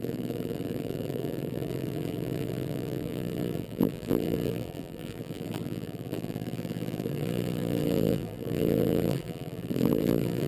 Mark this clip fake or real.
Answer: fake